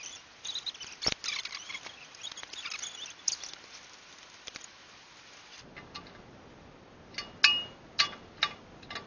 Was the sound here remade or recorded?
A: recorded